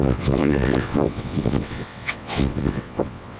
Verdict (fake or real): fake